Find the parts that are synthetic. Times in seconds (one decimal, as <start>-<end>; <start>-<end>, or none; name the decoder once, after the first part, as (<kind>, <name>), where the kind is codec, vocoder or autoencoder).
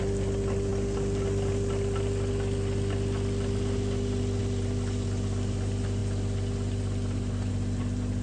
none